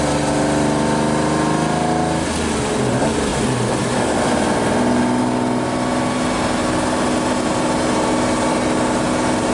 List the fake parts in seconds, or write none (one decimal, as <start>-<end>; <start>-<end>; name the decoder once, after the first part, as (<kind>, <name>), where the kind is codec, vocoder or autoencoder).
none

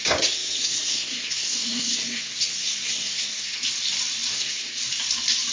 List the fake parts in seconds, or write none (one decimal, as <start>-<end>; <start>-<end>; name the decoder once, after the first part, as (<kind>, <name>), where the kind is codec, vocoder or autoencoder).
0.0-3.6 (codec, SNAC); 4.3-4.8

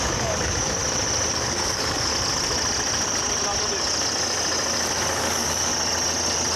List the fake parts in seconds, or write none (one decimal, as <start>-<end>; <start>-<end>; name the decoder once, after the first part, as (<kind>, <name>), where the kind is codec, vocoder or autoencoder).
0.0-0.8 (codec, DAC); 1.3-2.1; 5.3-5.7

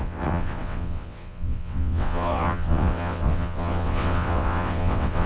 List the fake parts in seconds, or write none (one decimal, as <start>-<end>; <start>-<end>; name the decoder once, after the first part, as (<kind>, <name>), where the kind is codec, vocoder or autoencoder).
0.0-5.3 (vocoder, WaveNeXt)

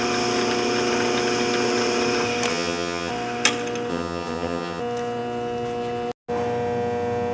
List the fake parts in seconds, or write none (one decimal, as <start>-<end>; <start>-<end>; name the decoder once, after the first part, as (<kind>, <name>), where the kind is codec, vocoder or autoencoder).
2.5-3.1 (vocoder, HiFi-GAN); 3.9-4.8